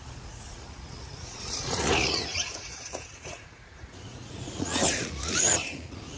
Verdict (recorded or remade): remade